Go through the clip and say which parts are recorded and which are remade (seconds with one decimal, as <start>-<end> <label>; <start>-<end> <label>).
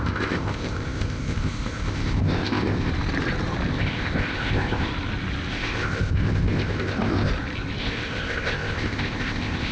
0.0-2.9 remade; 2.9-3.7 recorded; 3.7-4.9 remade; 4.9-5.5 recorded; 5.5-7.3 remade; 7.3-7.8 recorded; 7.8-9.7 remade